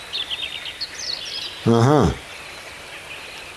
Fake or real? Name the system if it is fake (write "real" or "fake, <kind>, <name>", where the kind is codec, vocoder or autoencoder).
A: real